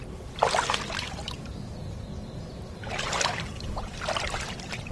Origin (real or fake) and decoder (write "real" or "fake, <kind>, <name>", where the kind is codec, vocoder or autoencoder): real